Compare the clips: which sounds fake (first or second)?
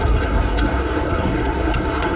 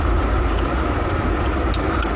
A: first